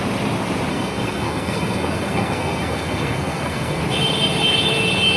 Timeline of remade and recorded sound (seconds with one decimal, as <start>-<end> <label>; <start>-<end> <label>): 0.0-0.7 recorded; 0.7-3.8 remade; 3.8-5.2 recorded